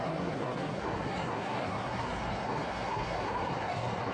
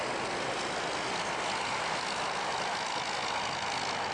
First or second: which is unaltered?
second